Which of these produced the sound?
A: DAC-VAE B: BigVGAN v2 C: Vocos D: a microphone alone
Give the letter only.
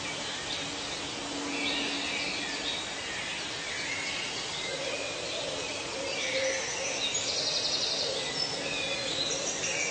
D